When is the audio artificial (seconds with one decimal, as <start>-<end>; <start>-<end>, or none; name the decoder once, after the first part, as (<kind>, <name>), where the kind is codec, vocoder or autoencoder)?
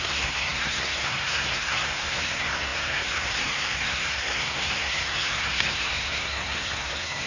0.0-7.3 (codec, SNAC)